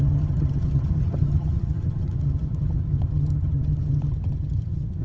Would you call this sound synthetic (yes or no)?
yes